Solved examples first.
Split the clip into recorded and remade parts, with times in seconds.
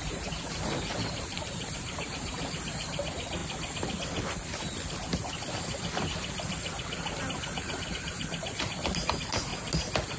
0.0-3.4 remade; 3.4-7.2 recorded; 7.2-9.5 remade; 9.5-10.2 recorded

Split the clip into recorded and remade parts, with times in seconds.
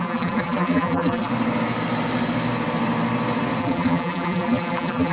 0.0-1.3 remade; 1.3-3.6 recorded; 3.6-5.1 remade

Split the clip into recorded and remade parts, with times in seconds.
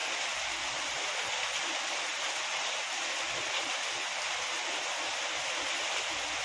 0.0-1.9 remade; 1.9-6.4 recorded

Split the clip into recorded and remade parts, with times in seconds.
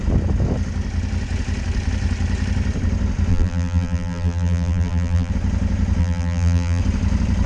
0.0-3.3 recorded; 3.3-5.3 remade; 5.3-6.0 recorded; 6.0-6.8 remade; 6.8-7.5 recorded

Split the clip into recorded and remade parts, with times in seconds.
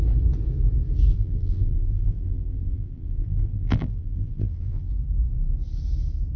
0.0-1.1 recorded; 1.1-4.9 remade; 4.9-6.4 recorded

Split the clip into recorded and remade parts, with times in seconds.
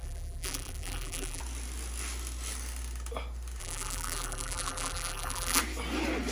0.0-1.4 remade; 1.4-3.6 recorded; 3.6-5.6 remade; 5.6-6.3 recorded